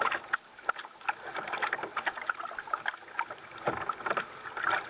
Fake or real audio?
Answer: real